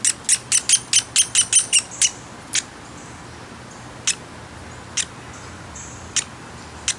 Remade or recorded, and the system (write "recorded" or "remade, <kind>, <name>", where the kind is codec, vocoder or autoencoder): recorded